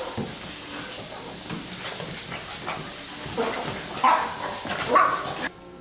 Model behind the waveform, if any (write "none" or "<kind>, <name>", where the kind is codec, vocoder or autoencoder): none